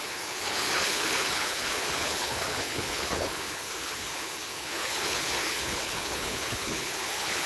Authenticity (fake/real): fake